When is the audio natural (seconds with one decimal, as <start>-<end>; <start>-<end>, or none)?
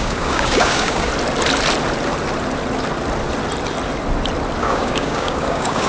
1.1-4.6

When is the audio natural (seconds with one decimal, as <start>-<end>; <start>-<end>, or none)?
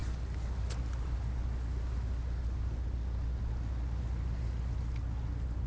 0.0-5.7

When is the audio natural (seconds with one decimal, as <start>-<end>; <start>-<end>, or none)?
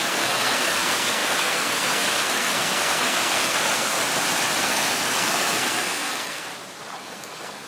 4.0-4.6; 6.5-7.0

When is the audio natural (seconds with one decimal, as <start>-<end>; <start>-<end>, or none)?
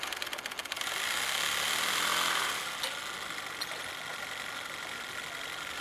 0.0-5.8